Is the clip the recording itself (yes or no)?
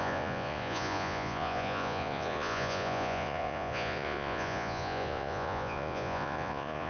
no